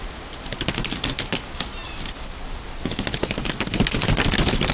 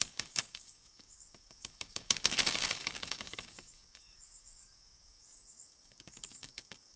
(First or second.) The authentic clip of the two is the first